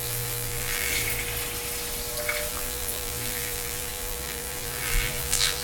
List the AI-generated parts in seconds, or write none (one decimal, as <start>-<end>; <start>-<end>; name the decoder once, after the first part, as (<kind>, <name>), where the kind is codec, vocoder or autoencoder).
0.0-0.9 (vocoder, BigVGAN v2); 2.5-5.6